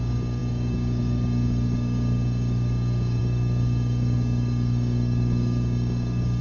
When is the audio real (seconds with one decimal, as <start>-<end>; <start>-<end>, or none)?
none